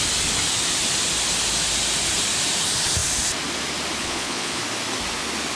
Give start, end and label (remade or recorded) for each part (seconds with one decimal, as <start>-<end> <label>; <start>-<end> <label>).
0.0-4.0 recorded; 4.0-4.6 remade; 4.6-5.6 recorded